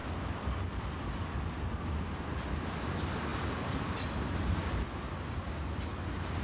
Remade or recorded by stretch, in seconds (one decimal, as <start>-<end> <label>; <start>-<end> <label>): 0.0-6.4 recorded

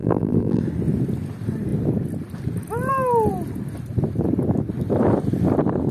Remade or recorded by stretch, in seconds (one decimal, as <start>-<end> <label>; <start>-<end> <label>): 0.0-0.6 remade; 0.6-5.9 recorded

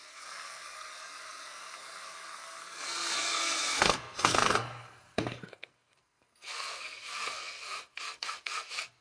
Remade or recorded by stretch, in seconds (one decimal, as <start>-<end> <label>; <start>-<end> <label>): 0.0-9.0 remade

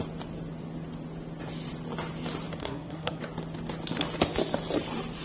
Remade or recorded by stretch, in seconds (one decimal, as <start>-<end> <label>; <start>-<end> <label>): 0.0-2.6 recorded; 2.6-3.2 remade; 3.2-5.2 recorded